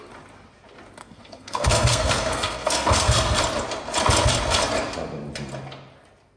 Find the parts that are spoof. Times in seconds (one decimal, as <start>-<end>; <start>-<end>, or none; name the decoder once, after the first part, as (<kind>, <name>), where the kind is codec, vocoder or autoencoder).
1.0-3.4 (codec, SNAC)